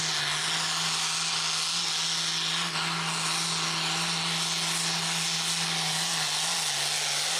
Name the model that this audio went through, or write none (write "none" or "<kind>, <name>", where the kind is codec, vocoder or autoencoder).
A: none